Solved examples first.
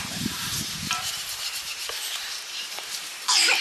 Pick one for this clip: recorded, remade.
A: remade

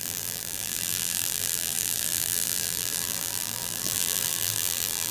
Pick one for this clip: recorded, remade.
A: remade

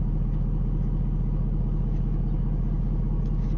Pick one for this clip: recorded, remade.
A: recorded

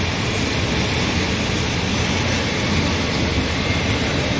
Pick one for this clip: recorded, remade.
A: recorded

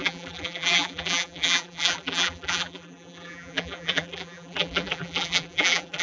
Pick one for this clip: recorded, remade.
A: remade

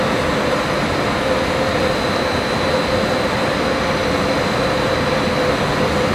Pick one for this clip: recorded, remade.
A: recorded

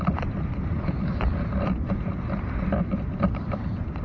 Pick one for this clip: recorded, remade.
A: remade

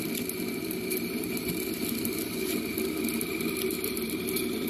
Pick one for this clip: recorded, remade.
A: recorded